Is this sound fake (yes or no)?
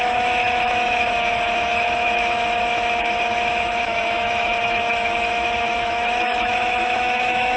yes